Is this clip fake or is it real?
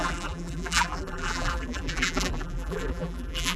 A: fake